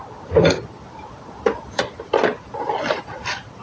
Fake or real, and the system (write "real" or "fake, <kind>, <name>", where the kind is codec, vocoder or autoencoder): real